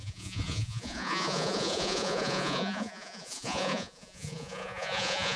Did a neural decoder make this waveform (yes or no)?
yes